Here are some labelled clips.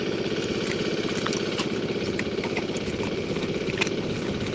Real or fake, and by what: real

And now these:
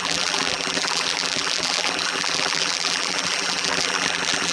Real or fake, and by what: fake, vocoder, BigVGAN v2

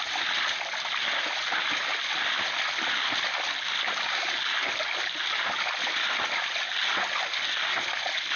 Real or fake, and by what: real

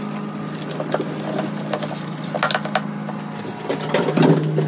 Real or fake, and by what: real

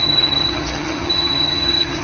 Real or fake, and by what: fake, vocoder, HiFi-GAN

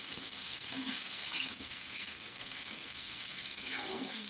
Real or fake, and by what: fake, codec, SNAC